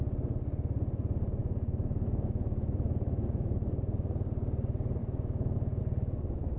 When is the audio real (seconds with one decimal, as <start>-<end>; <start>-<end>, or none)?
0.0-1.4; 3.8-5.0; 5.8-6.6

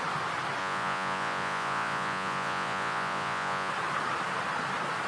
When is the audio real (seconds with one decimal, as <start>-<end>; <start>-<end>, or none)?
0.0-0.6; 3.7-5.1

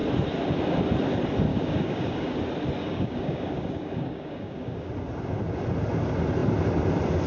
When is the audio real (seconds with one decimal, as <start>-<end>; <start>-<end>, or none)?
0.0-1.5; 2.4-2.8; 4.9-7.3

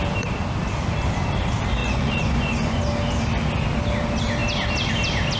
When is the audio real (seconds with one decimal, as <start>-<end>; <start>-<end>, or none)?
0.0-1.8; 2.8-5.4

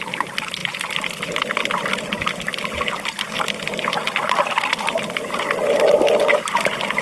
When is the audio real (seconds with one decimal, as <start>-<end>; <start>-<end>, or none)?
0.0-7.0

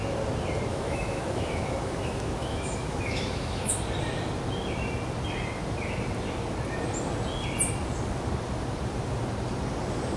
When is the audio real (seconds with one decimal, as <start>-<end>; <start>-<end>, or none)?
0.0-0.7; 3.7-10.2

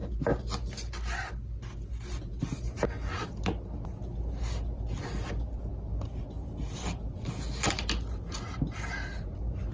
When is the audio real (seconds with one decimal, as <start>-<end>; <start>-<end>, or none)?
0.0-9.7